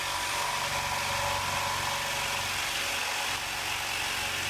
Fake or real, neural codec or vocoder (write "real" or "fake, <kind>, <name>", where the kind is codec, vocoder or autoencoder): real